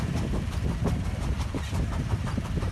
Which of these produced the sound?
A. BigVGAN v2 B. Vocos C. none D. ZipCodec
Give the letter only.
A